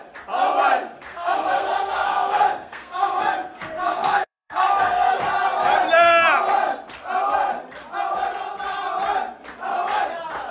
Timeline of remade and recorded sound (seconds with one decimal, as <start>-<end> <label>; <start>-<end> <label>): 0.0-1.1 recorded; 1.1-5.2 remade; 5.2-10.5 recorded